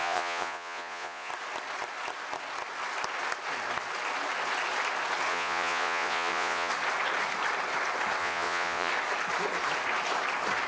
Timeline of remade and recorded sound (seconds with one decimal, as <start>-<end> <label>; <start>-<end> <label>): 0.0-1.3 remade; 1.3-5.3 recorded; 5.3-6.7 remade; 6.7-8.2 recorded; 8.2-8.9 remade; 8.9-10.7 recorded